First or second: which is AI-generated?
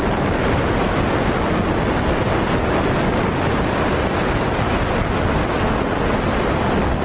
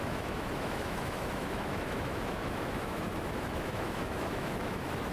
second